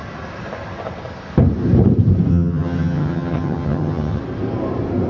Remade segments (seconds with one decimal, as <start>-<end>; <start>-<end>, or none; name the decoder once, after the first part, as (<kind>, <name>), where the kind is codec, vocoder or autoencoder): 2.3-4.2 (vocoder, HiFi-GAN)